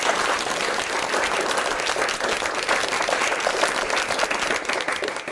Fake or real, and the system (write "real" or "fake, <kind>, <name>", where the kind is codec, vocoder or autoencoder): fake, vocoder, BigVGAN v2